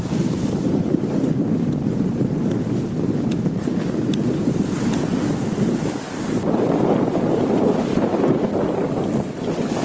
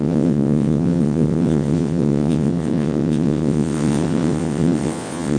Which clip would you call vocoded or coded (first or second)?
second